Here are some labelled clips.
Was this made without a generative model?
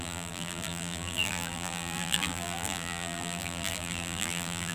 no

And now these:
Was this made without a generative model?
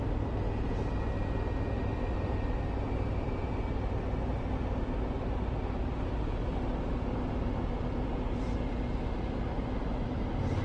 yes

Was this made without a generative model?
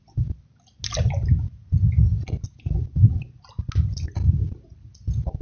yes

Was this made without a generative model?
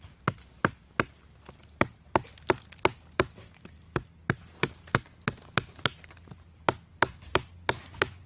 yes